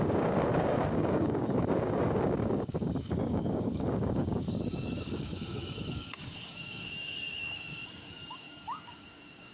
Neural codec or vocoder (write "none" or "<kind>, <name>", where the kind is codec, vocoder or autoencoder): codec, DAC